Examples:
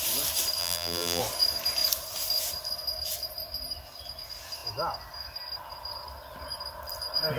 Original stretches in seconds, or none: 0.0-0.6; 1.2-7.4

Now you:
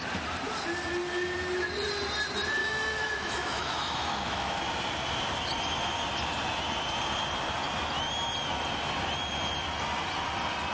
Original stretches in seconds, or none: 0.0-2.6; 4.6-10.7

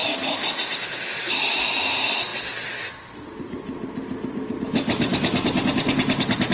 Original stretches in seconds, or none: 0.0-6.5